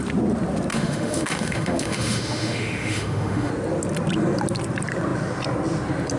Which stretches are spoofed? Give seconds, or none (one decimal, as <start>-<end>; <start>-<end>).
0.7-3.5